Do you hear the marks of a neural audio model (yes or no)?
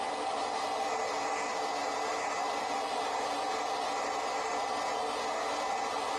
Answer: no